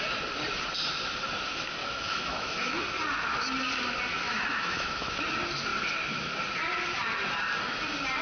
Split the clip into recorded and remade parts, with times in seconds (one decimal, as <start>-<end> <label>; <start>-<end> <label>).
0.0-1.8 recorded; 1.8-2.8 remade; 2.8-4.1 recorded; 4.1-5.2 remade; 5.2-8.2 recorded